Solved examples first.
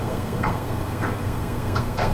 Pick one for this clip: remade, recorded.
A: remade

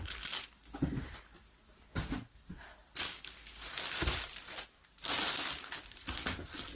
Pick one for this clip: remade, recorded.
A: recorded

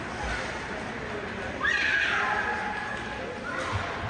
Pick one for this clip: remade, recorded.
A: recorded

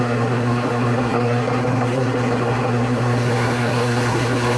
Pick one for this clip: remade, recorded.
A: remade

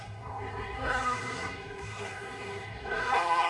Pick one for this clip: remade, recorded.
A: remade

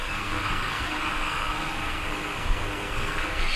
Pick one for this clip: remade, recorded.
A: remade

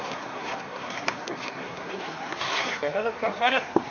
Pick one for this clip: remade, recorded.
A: remade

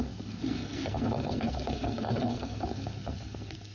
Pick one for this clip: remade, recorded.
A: remade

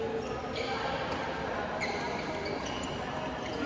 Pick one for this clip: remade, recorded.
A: recorded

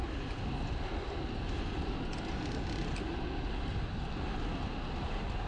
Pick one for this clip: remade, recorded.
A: recorded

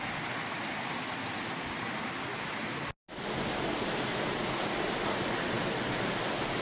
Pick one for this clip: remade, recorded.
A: recorded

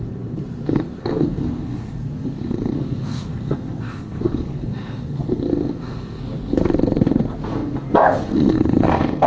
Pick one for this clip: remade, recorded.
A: remade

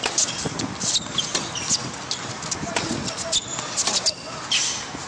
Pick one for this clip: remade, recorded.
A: recorded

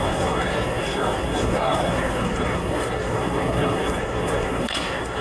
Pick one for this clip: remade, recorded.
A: remade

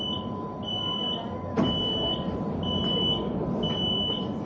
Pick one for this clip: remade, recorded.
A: recorded